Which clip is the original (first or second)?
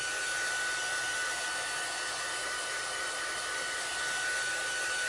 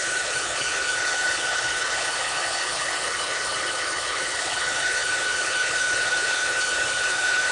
first